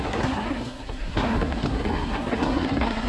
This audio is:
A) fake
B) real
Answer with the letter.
A